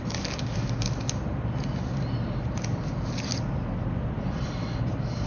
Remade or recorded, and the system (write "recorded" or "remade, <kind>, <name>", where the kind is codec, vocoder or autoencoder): recorded